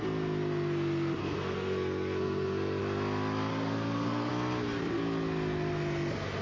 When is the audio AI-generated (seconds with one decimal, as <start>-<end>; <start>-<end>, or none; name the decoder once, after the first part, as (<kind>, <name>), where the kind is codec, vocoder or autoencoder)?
1.2-2.8 (codec, SNAC); 3.5-4.3

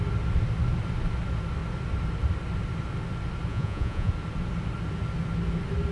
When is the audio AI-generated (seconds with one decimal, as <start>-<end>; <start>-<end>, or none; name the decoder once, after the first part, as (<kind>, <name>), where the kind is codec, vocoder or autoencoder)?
3.5-4.1 (vocoder, Vocos)

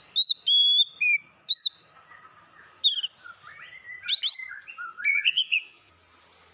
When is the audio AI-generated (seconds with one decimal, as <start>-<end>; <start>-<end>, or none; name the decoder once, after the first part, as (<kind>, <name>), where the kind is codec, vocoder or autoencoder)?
5.1-5.9 (vocoder, Vocos)

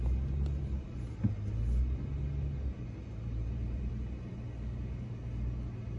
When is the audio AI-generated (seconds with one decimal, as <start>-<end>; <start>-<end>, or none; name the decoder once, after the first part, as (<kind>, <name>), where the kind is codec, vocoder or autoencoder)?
3.0-3.9 (vocoder, BigVGAN v2)

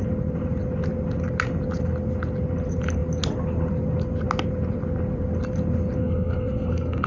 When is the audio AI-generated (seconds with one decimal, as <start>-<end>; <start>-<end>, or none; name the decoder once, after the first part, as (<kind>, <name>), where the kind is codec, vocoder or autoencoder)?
6.0-7.1 (codec, SNAC)